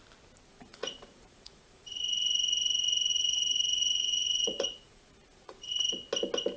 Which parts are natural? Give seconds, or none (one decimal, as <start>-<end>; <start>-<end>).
0.0-0.5; 2.0-3.1; 5.7-6.6